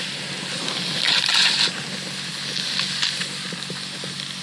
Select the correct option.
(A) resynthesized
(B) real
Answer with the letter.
B